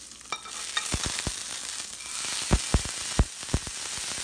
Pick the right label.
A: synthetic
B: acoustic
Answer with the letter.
B